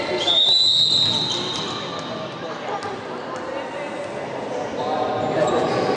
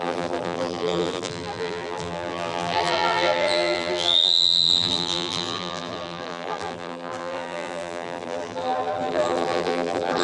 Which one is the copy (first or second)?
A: second